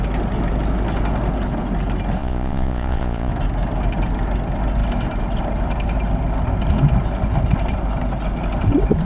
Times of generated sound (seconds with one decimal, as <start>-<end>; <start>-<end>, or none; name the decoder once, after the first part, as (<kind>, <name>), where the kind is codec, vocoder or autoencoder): 2.2-3.3 (vocoder, Vocos)